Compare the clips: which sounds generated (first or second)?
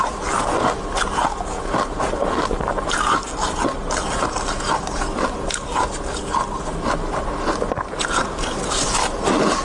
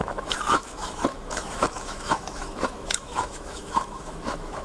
second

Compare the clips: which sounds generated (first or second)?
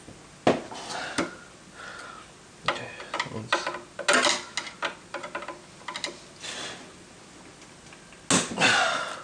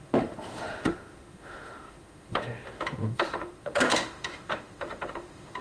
second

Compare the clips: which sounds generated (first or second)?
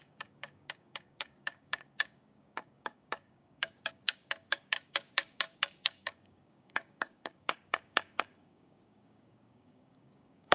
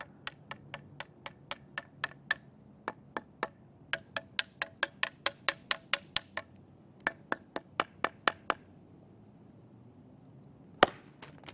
first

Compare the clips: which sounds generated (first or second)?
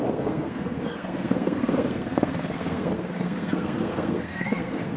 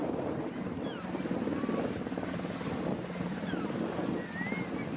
first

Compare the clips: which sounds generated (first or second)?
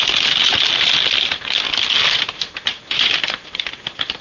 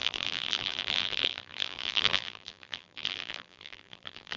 second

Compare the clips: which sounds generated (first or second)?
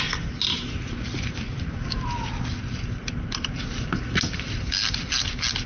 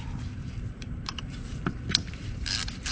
second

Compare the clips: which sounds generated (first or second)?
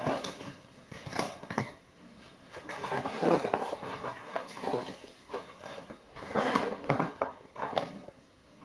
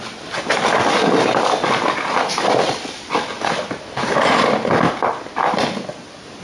first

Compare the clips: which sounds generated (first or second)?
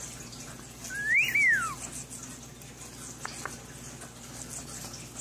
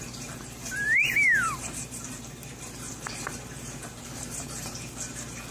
second